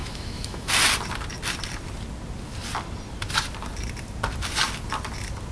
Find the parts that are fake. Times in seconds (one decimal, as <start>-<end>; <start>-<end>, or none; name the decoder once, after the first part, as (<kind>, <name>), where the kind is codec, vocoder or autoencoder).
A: 0.0-0.7 (autoencoder, DAC-VAE)